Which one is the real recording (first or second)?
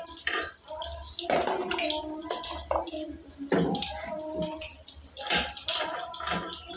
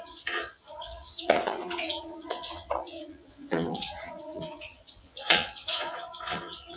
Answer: first